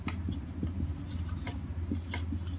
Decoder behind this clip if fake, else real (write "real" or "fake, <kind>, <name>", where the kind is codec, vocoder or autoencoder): real